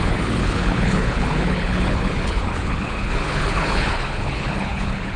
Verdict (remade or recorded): remade